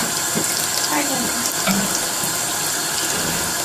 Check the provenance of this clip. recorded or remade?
recorded